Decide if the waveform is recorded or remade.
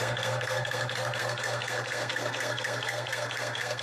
remade